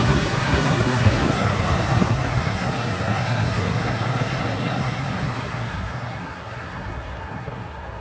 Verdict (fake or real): fake